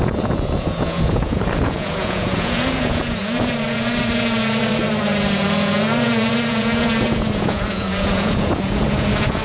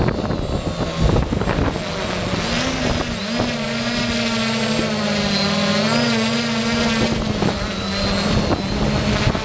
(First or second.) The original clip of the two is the second